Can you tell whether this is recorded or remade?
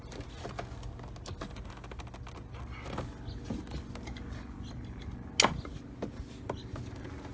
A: recorded